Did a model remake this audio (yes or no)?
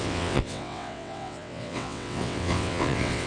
yes